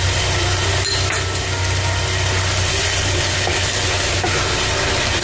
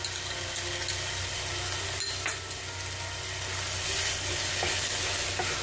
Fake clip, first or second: first